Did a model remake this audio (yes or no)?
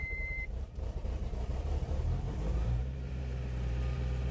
yes